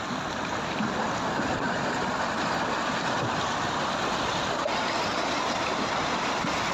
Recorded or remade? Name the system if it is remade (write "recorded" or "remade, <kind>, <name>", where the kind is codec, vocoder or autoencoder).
recorded